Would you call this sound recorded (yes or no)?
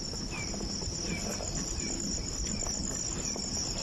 yes